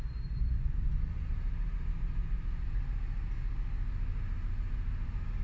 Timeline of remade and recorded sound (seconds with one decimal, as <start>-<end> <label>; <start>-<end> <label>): 0.0-1.3 recorded; 1.3-2.8 remade; 2.8-4.1 recorded; 4.1-5.4 remade

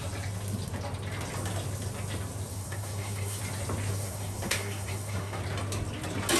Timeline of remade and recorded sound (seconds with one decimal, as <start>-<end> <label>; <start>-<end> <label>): 0.0-2.5 recorded; 2.5-3.4 remade; 3.4-3.9 recorded; 3.9-5.4 remade; 5.4-6.4 recorded

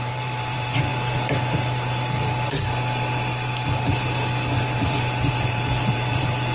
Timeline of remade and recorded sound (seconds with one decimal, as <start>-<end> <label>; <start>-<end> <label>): 0.0-0.9 remade; 0.9-4.8 recorded; 4.8-6.5 remade

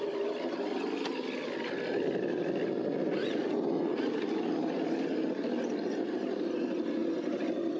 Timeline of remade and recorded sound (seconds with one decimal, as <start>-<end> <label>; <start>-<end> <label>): 0.0-7.8 recorded